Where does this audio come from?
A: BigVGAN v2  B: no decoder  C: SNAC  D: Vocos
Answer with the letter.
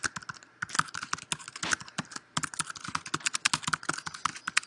B